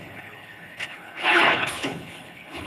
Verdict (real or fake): fake